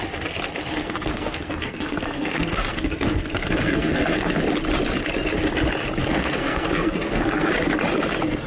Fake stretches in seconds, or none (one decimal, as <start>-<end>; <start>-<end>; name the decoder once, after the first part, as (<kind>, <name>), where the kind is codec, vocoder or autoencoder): 0.8-4.3 (codec, SNAC); 6.0-7.5